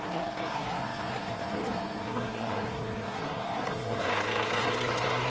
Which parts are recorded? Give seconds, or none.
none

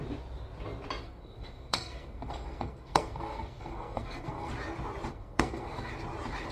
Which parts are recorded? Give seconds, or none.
0.0-1.0; 4.5-5.1; 5.9-6.5